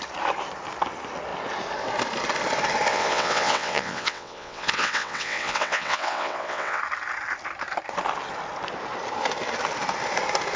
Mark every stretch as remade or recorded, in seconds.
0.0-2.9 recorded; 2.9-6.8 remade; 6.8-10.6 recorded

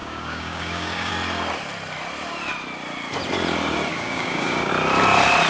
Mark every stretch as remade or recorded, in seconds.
0.0-1.1 remade; 1.1-3.9 recorded; 3.9-4.7 remade; 4.7-5.5 recorded